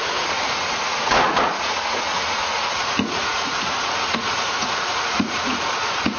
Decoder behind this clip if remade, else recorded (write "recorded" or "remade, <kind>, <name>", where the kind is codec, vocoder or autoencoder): remade, vocoder, Vocos